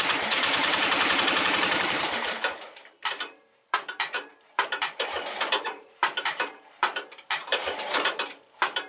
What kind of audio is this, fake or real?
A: fake